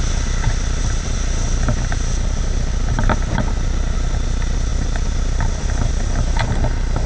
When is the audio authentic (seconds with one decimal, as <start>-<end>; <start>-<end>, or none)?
0.0-7.1